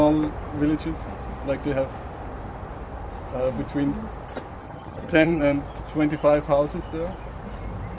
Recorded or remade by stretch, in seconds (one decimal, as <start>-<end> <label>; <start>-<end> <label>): 0.0-4.6 recorded; 4.6-5.4 remade; 5.4-8.0 recorded